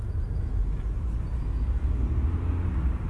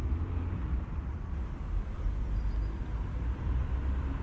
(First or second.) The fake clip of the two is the second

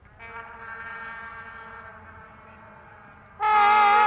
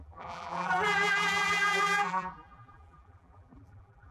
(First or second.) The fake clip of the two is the second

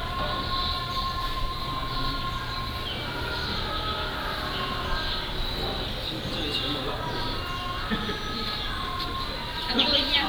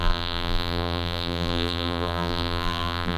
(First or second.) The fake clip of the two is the second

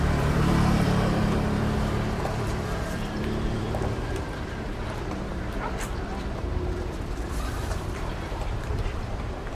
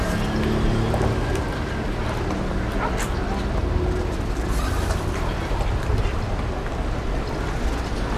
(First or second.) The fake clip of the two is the first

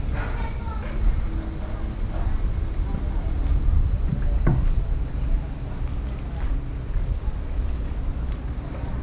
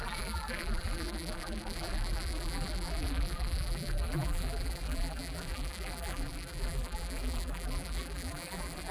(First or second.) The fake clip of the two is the second